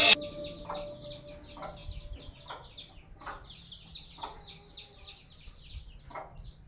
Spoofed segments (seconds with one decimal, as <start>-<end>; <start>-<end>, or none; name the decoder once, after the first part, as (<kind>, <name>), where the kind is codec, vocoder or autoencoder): none